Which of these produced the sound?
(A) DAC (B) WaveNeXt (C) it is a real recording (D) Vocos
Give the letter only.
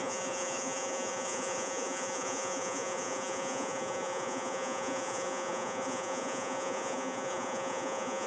D